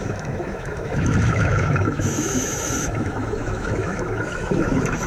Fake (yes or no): yes